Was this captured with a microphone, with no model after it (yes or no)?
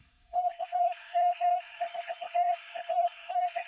no